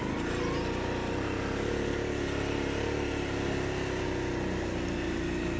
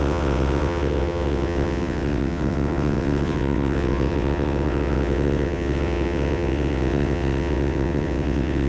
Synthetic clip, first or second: second